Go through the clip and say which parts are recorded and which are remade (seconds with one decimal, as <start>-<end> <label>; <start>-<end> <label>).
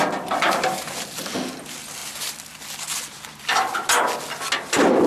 0.0-5.1 recorded